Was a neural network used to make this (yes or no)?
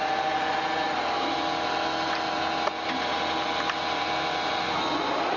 no